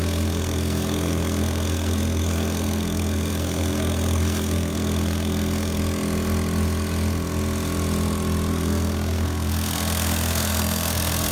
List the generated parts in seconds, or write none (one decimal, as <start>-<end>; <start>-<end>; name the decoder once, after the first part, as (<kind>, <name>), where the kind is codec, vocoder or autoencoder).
0.0-5.8 (codec, SNAC); 8.5-11.3